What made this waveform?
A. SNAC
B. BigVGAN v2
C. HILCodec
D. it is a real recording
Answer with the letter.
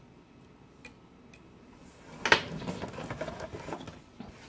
D